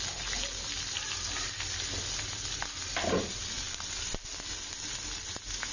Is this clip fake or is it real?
real